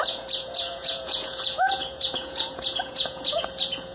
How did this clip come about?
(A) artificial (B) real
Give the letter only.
A